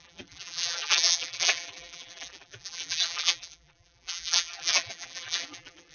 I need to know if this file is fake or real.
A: fake